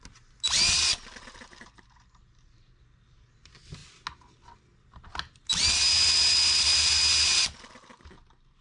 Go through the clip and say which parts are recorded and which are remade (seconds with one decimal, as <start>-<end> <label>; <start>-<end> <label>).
0.0-8.6 recorded